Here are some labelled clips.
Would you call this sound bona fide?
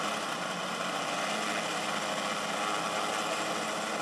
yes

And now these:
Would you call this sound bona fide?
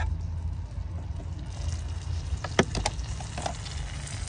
yes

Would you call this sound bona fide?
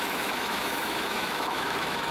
no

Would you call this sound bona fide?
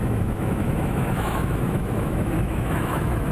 no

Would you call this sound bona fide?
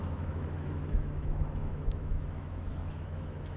no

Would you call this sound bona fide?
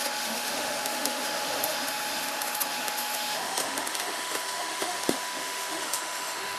no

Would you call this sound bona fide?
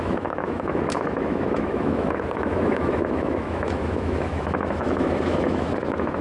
no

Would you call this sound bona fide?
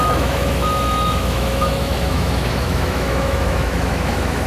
no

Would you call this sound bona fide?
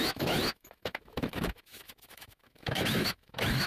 no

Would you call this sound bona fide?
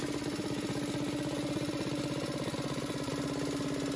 yes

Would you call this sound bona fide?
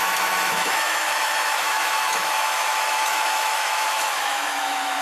no